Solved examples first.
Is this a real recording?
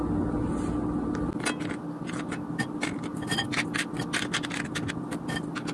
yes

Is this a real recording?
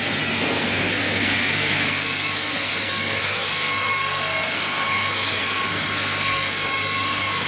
no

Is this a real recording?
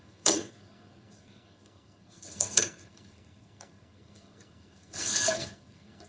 no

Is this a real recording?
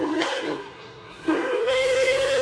no